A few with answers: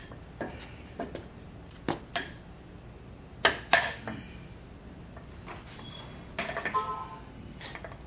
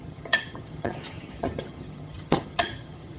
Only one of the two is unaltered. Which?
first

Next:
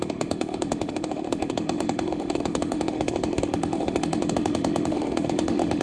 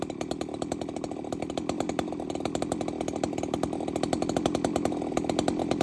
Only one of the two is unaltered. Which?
second